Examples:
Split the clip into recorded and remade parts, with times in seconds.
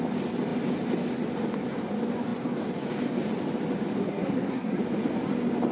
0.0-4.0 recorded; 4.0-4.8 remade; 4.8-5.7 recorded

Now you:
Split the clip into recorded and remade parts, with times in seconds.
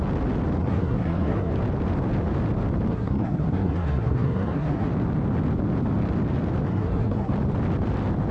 0.0-0.6 recorded; 0.6-1.5 remade; 1.5-2.9 recorded; 2.9-4.9 remade; 4.9-6.7 recorded; 6.7-7.3 remade; 7.3-8.3 recorded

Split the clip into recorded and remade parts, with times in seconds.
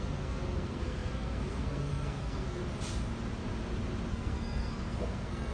0.0-2.6 remade; 2.6-4.1 recorded; 4.1-5.5 remade